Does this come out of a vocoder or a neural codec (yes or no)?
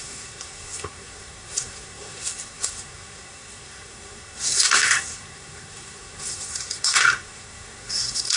yes